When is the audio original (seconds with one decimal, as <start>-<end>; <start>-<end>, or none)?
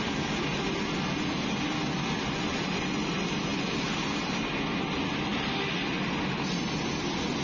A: 0.0-7.4